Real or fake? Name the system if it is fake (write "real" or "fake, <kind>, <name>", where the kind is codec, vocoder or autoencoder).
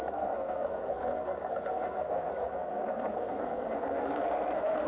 fake, codec, SNAC